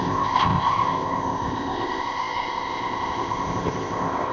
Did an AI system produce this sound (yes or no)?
yes